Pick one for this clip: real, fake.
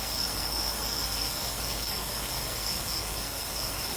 fake